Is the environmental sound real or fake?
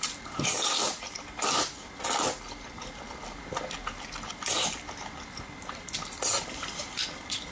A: real